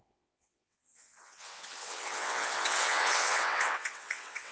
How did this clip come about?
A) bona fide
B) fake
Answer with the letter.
B